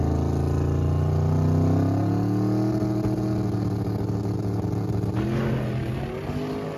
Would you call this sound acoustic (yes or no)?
yes